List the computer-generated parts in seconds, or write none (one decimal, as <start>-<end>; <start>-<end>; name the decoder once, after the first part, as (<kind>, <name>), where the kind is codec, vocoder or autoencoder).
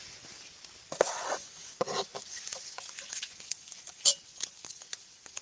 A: 0.9-5.4 (vocoder, Vocos)